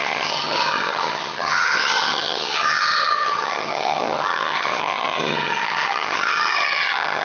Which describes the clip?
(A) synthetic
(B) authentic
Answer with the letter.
A